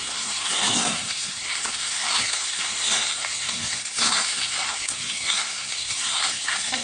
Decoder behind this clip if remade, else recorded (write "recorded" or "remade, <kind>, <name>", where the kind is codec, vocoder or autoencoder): remade, codec, SNAC